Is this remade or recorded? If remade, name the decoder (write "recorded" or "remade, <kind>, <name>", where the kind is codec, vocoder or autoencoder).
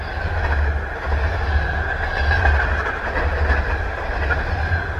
recorded